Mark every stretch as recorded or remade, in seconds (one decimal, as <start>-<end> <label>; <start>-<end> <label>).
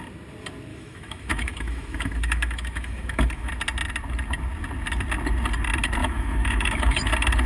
0.0-0.7 recorded; 0.7-3.5 remade; 3.5-6.0 recorded; 6.0-7.1 remade; 7.1-7.5 recorded